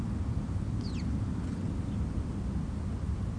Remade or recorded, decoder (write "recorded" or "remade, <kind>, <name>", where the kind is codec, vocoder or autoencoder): recorded